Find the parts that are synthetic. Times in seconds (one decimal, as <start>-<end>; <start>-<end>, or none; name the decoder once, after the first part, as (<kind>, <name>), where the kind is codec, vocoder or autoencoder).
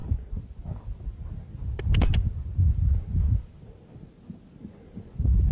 none